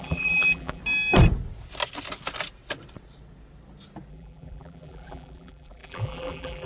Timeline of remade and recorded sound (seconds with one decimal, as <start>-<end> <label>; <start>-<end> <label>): 0.0-0.8 remade; 0.8-4.1 recorded; 4.1-6.7 remade